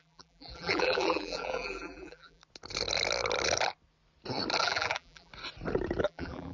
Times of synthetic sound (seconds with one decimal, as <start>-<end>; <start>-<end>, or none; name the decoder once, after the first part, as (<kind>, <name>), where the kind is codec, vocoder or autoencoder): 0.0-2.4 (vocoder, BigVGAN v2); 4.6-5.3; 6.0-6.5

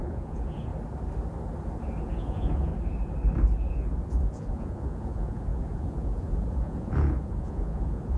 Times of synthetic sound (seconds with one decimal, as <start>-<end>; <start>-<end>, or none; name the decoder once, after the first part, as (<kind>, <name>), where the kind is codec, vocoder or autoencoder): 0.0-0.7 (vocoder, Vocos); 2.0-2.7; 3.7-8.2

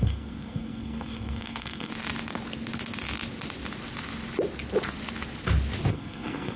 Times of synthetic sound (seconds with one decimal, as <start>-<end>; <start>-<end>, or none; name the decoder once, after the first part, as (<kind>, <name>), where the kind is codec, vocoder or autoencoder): 0.0-1.9 (codec, SNAC); 5.9-6.6

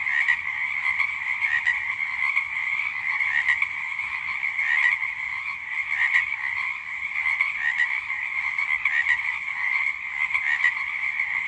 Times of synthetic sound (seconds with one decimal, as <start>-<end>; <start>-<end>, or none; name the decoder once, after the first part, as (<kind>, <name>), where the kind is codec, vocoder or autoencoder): none

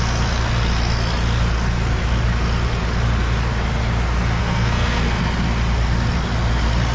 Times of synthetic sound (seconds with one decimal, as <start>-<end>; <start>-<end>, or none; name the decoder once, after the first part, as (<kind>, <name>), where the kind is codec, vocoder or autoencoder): 4.4-5.2 (codec, SNAC)

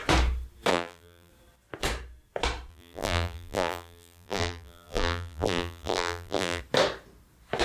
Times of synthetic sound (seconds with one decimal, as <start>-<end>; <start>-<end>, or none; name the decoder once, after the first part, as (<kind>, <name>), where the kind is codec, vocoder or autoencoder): 0.7-1.3 (vocoder, BigVGAN v2); 2.7-6.6

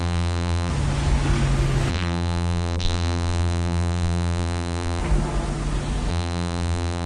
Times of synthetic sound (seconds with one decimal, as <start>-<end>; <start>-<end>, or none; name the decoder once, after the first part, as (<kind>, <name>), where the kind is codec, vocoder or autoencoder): 0.0-0.7 (vocoder, BigVGAN v2); 1.9-5.0; 6.1-7.1

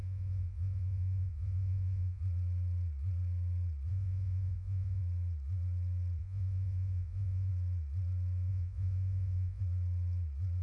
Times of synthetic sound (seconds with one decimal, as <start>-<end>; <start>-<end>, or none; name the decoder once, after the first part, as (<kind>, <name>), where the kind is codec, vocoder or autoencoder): 0.0-2.2 (vocoder, Vocos); 3.9-5.0; 6.2-7.5; 8.5-9.6